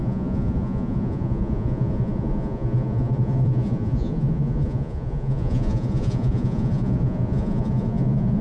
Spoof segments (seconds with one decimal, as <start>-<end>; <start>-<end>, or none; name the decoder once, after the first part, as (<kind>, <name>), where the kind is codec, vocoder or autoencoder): 0.0-8.4 (vocoder, Vocos)